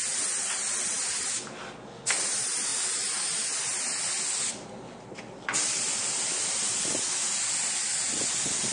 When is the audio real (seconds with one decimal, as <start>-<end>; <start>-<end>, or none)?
0.0-8.7